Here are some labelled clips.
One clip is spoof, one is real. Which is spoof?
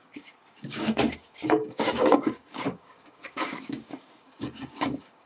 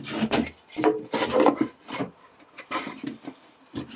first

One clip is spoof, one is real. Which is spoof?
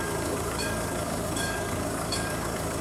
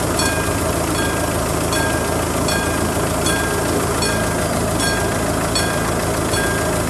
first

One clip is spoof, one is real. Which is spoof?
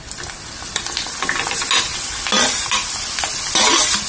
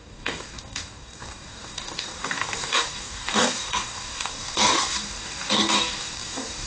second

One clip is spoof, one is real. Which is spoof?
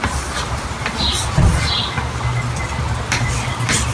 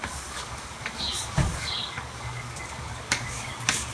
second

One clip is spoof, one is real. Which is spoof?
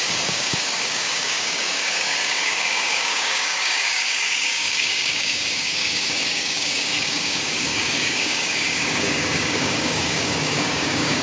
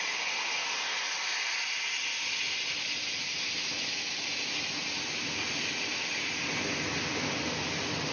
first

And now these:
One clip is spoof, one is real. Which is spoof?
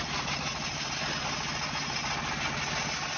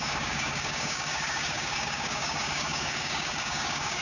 second